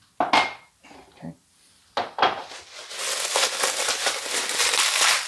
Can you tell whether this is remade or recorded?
recorded